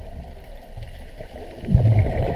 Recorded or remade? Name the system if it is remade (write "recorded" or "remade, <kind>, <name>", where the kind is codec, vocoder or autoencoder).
remade, vocoder, BigVGAN v2